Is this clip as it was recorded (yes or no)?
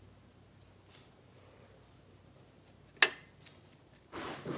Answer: yes